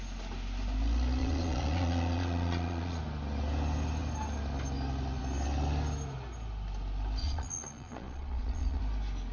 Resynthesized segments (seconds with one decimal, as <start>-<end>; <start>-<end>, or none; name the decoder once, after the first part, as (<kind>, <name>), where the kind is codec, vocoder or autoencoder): 1.2-3.0 (vocoder, Vocos); 7.2-8.8